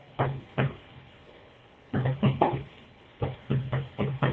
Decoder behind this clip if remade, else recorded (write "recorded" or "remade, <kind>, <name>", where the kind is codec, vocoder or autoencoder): remade, codec, HILCodec